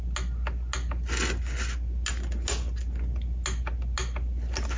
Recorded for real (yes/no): yes